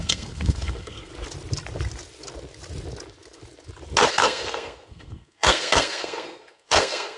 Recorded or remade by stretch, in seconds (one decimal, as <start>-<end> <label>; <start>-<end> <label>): 0.0-1.1 remade; 1.1-4.1 recorded; 4.1-7.2 remade